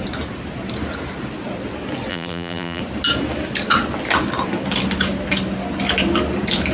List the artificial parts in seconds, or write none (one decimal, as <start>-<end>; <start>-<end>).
2.1-2.8